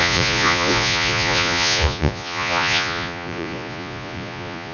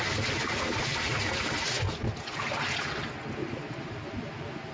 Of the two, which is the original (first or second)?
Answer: second